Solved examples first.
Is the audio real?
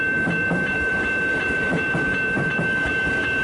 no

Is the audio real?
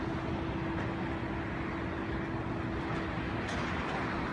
yes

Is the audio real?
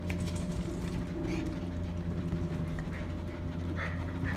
yes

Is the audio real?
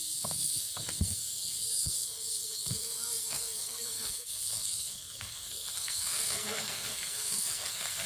no